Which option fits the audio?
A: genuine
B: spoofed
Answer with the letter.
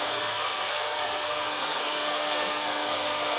B